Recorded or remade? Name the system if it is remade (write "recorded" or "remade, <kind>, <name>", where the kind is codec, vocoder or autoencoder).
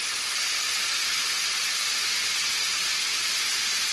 recorded